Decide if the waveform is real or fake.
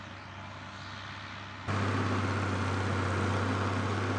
real